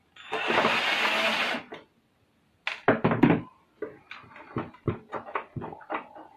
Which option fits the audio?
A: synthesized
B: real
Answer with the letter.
B